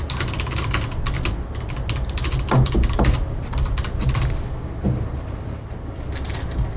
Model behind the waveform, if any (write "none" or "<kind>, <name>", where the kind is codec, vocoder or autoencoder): none